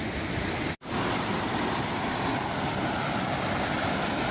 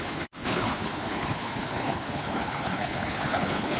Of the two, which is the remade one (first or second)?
second